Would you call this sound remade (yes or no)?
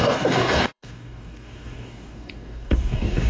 yes